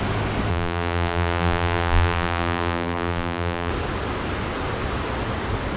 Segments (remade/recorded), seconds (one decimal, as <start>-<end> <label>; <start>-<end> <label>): 0.0-0.5 recorded; 0.5-3.7 remade; 3.7-5.8 recorded